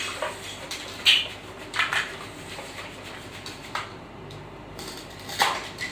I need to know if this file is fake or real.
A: fake